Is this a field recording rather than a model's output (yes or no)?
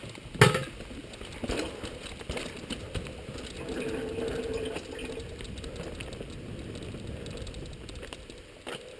yes